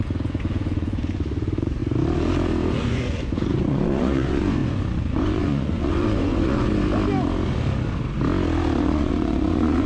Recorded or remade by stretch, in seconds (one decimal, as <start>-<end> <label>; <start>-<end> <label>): 0.0-1.8 remade; 1.8-2.8 recorded; 2.8-6.7 remade; 6.7-8.8 recorded; 8.8-9.9 remade